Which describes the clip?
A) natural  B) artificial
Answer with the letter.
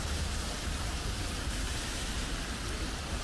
B